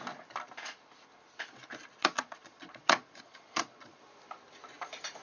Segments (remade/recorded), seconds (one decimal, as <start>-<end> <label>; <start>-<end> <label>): 0.0-2.0 recorded; 2.0-4.0 remade; 4.0-5.2 recorded